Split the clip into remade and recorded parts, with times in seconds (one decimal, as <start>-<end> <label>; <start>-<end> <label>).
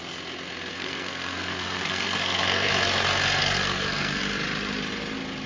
0.0-0.7 recorded; 0.7-2.7 remade; 2.7-3.4 recorded; 3.4-4.2 remade; 4.2-5.5 recorded